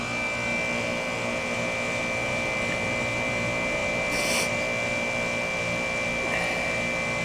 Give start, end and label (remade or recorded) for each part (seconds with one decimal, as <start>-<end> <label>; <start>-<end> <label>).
0.0-7.2 recorded